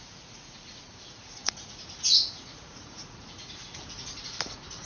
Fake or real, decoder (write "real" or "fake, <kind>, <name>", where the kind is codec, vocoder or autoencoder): fake, vocoder, Vocos